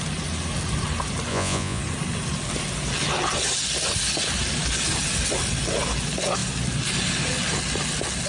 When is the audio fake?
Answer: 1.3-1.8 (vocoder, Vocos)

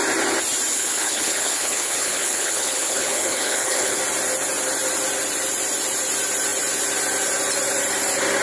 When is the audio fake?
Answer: 0.7-4.0 (codec, HILCodec)